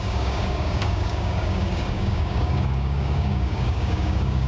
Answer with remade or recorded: remade